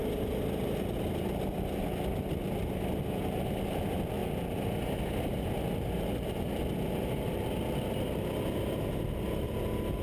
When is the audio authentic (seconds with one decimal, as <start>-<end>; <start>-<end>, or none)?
0.0-10.0